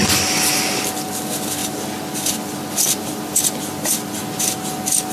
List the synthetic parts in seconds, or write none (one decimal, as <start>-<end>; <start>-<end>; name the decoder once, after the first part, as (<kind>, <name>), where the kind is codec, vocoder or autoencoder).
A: none